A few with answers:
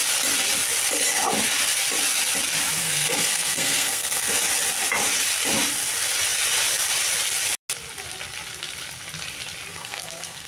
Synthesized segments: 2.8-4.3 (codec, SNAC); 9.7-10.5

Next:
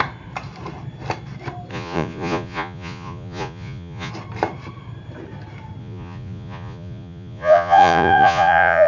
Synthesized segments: 1.7-4.1 (vocoder, Vocos); 5.8-8.9

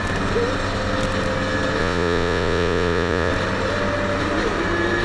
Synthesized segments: 1.8-3.3 (vocoder, Vocos)

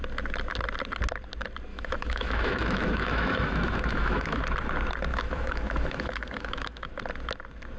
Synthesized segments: 1.7-4.4 (autoencoder, DAC-VAE); 5.1-6.9

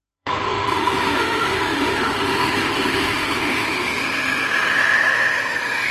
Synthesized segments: 0.0-5.9 (autoencoder, DAC-VAE)

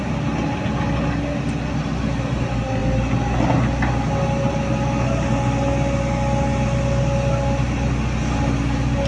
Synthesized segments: none

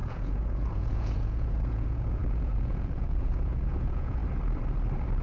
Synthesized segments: 0.0-4.2 (vocoder, Vocos)